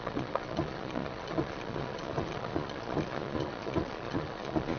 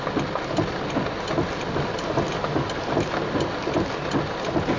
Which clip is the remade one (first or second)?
first